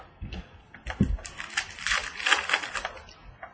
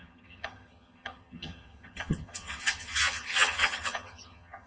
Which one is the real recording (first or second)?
first